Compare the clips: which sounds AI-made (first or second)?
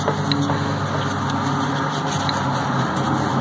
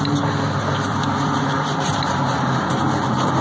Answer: second